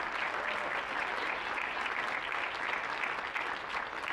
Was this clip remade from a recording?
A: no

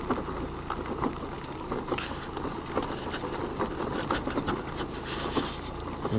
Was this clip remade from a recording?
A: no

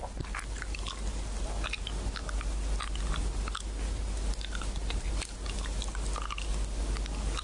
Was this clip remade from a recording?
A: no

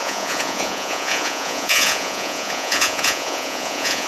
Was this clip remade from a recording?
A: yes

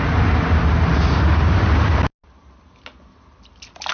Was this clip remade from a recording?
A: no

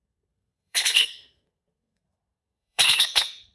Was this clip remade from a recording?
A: yes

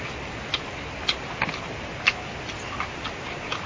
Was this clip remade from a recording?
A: no